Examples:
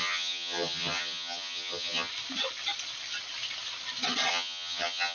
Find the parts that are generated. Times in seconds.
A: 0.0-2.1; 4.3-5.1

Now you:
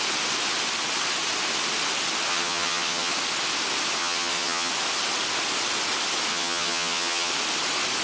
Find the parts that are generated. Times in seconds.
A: 2.3-3.1; 4.0-4.7; 6.3-7.3